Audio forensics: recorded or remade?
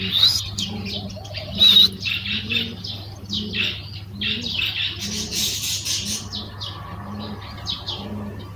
recorded